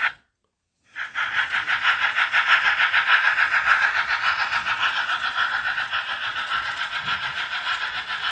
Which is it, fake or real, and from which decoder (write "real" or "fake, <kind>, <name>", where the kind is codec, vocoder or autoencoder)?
fake, vocoder, Vocos